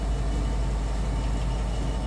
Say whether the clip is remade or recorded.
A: recorded